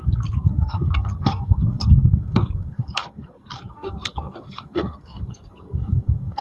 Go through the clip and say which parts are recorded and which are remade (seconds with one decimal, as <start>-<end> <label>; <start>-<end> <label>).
0.0-6.4 remade